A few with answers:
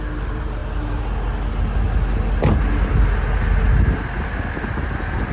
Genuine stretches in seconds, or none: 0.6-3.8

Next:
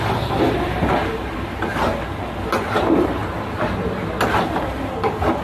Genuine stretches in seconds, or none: 1.7-2.8; 3.2-4.5